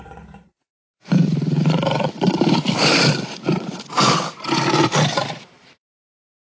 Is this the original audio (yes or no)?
no